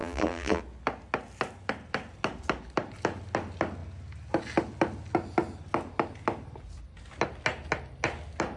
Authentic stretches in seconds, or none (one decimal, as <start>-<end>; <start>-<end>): 0.6-8.6